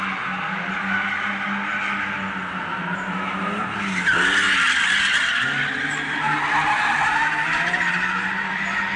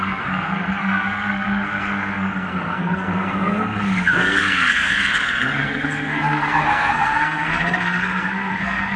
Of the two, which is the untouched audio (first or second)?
first